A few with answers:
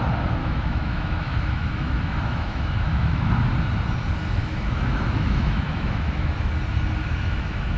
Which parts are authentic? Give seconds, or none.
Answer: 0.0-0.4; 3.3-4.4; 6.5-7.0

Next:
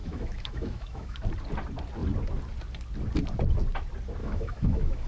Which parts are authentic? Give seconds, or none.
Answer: 1.2-4.2

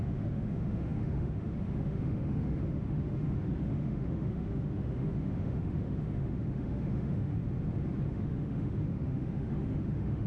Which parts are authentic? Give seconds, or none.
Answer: 7.4-8.1

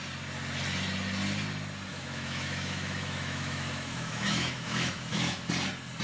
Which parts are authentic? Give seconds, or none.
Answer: 0.0-1.9; 5.5-6.0

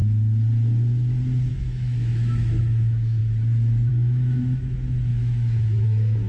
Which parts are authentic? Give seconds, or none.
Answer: 0.0-1.5; 3.2-3.9

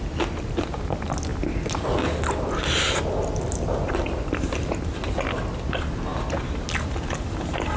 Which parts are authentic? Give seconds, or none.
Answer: 0.0-7.8

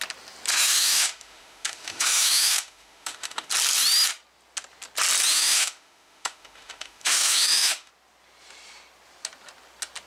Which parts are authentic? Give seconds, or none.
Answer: 0.0-0.5; 3.5-5.3; 7.9-10.1

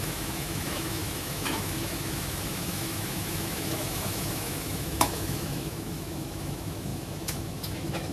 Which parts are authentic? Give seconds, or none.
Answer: none